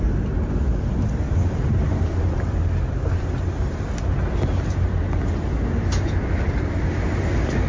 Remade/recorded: recorded